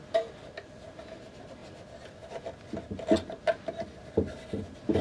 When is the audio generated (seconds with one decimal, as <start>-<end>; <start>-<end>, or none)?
none